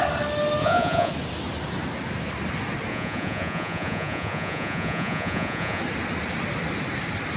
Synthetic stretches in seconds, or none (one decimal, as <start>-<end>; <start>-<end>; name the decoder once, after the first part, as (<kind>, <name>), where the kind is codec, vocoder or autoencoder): 0.6-1.1 (vocoder, Vocos); 2.9-5.8